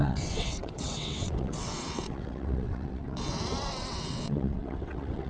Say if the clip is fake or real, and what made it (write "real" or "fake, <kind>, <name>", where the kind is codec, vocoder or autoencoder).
fake, vocoder, WaveNeXt